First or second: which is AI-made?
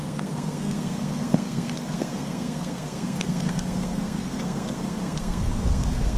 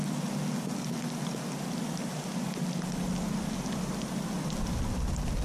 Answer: first